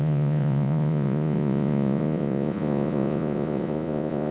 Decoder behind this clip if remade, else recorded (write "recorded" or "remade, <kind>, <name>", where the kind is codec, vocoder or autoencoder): remade, vocoder, Vocos